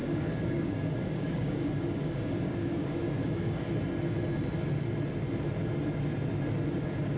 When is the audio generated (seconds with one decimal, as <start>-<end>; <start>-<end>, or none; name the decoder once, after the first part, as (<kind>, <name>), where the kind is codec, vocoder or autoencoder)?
0.0-3.7 (codec, DAC)